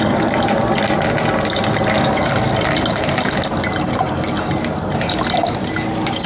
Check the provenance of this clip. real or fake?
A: real